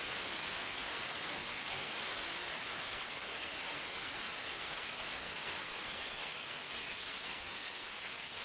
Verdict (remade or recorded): remade